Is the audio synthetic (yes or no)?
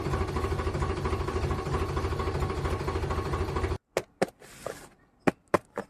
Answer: no